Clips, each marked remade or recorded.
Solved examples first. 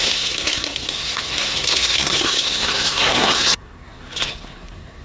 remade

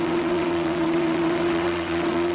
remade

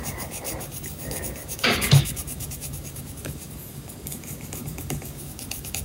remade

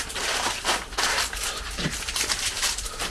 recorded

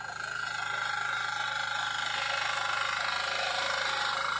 recorded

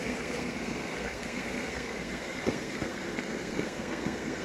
remade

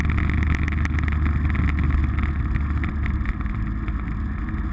recorded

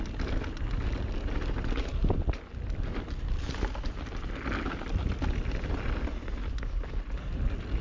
recorded